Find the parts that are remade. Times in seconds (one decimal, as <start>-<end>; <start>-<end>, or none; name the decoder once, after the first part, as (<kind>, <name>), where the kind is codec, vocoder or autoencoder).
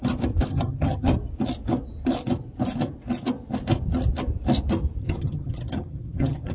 0.5-1.1 (vocoder, HiFi-GAN); 5.0-6.5